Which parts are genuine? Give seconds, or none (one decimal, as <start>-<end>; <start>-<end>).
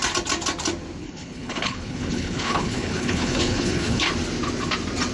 0.0-1.0; 4.1-5.1